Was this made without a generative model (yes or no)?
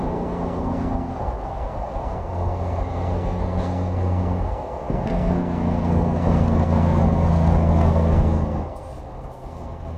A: no